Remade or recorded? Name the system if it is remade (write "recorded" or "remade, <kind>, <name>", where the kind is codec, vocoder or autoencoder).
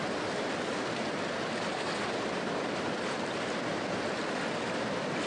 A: recorded